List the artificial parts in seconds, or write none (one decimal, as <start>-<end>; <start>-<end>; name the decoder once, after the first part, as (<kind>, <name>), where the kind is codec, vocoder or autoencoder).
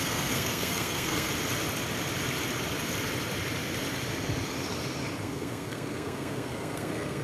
0.0-1.3 (codec, SNAC); 5.2-7.2